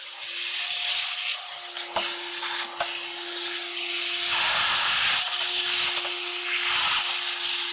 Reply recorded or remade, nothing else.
recorded